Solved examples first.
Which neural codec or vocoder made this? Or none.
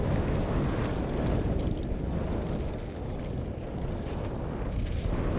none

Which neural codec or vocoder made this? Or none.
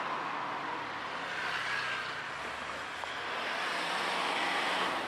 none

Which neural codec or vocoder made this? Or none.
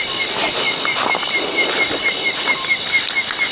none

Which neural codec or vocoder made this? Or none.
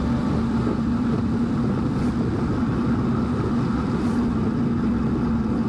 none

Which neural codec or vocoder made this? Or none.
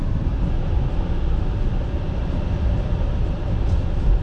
none